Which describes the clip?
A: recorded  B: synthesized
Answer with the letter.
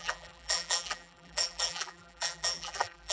B